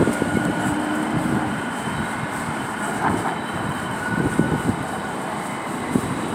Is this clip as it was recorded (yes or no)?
no